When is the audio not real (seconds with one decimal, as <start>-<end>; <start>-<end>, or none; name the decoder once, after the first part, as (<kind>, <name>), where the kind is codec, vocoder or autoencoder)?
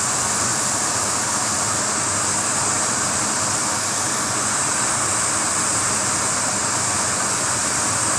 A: 0.0-0.5 (vocoder, Vocos); 4.0-4.6; 6.6-7.6